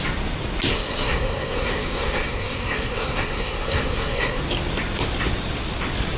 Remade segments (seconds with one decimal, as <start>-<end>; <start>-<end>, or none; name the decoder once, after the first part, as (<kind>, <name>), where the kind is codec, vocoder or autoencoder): 0.7-4.4 (codec, SNAC)